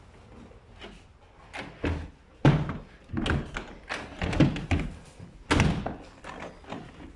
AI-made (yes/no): no